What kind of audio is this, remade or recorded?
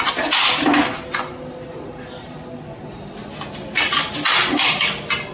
recorded